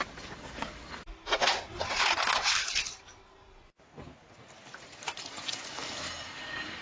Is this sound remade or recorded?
recorded